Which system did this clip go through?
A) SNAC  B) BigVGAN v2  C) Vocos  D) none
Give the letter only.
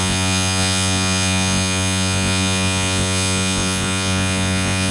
C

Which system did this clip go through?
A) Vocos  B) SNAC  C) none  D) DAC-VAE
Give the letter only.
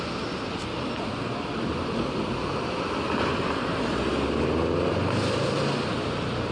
C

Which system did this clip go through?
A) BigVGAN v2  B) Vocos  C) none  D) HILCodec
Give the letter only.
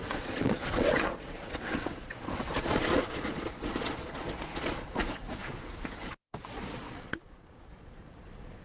B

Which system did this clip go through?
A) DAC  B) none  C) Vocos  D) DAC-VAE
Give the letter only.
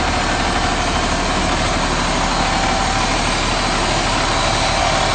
B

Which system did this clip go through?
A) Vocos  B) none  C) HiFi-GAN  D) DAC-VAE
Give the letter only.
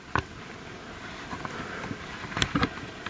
B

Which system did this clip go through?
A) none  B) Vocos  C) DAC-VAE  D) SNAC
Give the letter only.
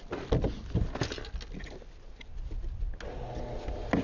A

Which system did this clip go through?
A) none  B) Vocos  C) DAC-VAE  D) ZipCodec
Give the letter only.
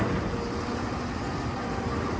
A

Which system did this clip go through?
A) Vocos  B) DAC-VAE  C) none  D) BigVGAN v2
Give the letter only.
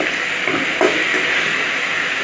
C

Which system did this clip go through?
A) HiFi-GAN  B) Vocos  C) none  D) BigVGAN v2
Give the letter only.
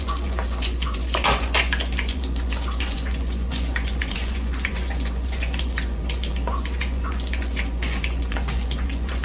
B